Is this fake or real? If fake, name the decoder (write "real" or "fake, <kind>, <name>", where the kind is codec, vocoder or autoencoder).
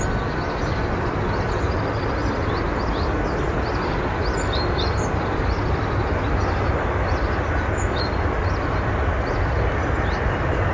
real